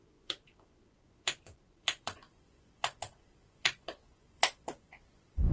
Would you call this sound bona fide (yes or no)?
no